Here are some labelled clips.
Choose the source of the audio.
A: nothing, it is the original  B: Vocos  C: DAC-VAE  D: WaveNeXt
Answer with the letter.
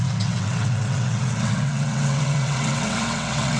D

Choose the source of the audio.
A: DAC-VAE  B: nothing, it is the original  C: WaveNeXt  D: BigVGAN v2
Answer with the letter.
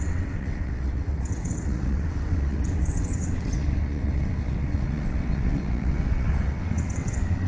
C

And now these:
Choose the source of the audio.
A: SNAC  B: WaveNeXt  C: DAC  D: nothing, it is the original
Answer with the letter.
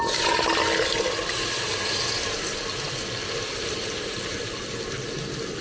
D